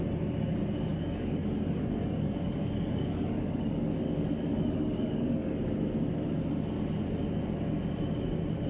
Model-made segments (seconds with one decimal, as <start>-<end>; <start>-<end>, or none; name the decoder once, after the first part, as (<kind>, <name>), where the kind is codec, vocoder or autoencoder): 0.9-5.6 (codec, DAC)